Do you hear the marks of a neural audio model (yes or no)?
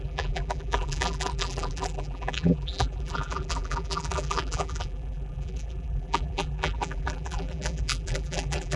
yes